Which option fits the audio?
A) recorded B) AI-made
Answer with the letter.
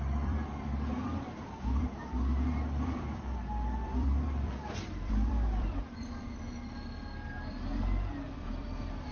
B